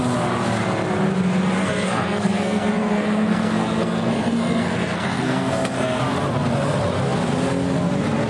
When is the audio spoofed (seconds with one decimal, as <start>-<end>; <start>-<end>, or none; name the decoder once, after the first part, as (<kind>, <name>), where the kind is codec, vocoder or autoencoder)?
1.6-6.0 (codec, SNAC)